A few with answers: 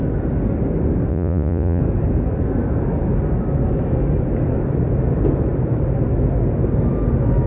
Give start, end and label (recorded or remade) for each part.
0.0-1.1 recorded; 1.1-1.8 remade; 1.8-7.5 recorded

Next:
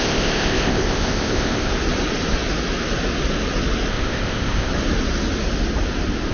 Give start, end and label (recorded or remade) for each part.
0.0-1.7 remade; 1.7-3.9 recorded; 3.9-4.7 remade; 4.7-6.3 recorded

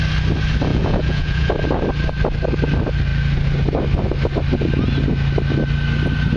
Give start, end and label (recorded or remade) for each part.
0.0-0.7 recorded; 0.7-1.5 remade; 1.5-6.4 recorded

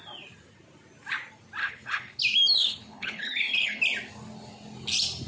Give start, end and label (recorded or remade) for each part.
0.0-1.6 recorded; 1.6-2.2 remade; 2.2-2.6 recorded; 2.6-3.8 remade; 3.8-5.3 recorded

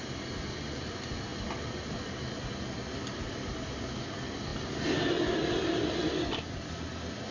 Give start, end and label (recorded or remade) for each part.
0.0-7.3 recorded

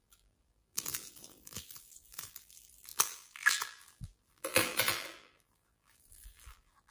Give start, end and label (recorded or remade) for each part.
0.0-6.9 remade

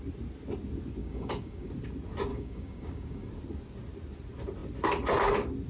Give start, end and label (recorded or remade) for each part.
0.0-1.0 recorded; 1.0-1.7 remade; 1.7-2.3 recorded; 2.3-3.3 remade; 3.3-5.7 recorded

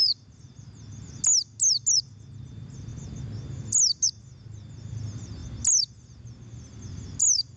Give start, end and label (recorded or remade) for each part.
0.0-7.6 recorded